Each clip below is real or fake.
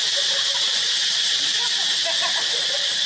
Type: fake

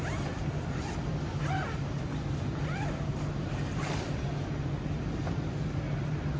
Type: real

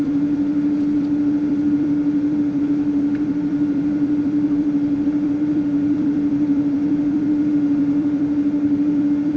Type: fake